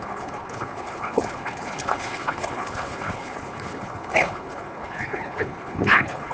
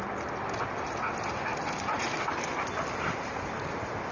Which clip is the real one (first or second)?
second